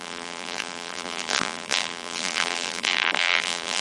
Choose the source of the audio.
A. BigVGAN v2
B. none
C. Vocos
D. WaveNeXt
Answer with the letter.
A